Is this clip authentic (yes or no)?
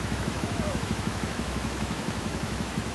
no